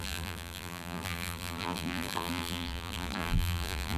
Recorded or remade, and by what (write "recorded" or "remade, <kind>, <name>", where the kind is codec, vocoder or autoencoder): remade, vocoder, BigVGAN v2